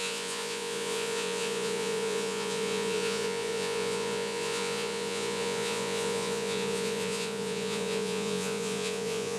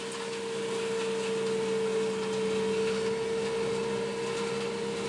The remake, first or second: first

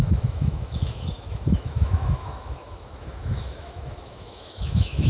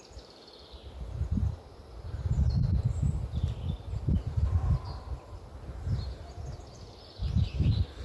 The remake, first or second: first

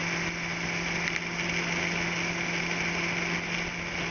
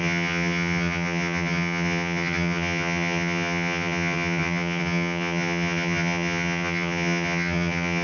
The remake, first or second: second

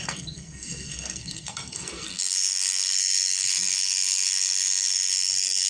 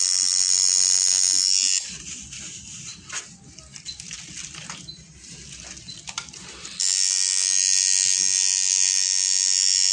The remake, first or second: first